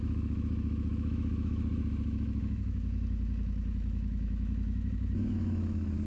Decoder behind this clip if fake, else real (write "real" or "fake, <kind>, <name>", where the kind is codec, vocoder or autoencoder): fake, autoencoder, DAC-VAE